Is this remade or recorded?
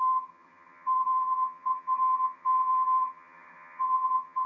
remade